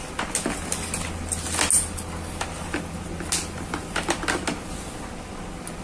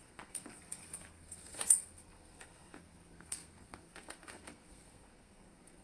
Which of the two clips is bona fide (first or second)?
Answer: first